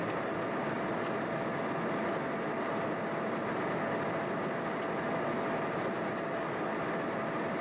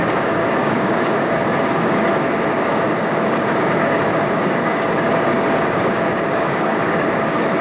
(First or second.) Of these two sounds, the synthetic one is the second